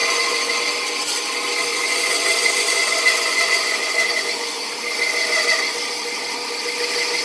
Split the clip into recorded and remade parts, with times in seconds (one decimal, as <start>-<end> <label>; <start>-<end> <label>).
0.0-0.6 remade; 0.6-1.7 recorded; 1.7-4.6 remade; 4.6-7.2 recorded